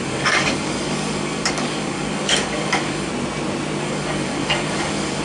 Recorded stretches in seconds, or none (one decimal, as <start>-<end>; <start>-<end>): 3.1-3.8